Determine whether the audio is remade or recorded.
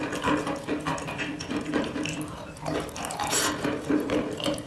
recorded